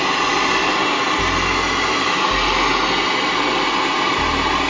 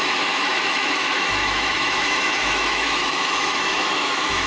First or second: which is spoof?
second